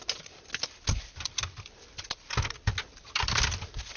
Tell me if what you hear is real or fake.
real